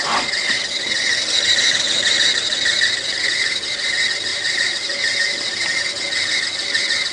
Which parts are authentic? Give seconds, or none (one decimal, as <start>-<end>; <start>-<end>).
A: 0.0-4.3; 5.8-7.1